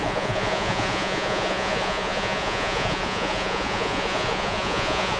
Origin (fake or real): fake